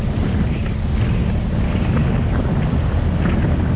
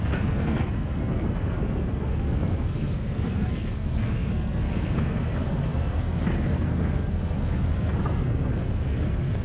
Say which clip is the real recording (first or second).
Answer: first